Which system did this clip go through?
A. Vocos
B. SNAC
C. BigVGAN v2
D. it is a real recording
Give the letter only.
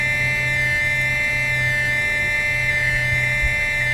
D